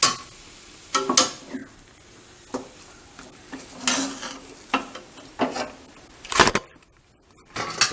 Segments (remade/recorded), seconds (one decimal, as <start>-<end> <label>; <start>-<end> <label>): 0.0-7.9 recorded